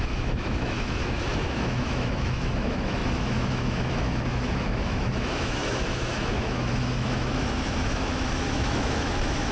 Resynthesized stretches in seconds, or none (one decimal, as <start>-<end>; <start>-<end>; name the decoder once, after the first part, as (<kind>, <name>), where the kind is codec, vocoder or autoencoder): 0.0-9.5 (autoencoder, DAC-VAE)